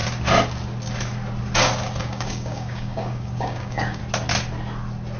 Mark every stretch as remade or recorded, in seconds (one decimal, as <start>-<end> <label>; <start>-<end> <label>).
0.0-2.0 recorded; 2.0-4.0 remade; 4.0-5.2 recorded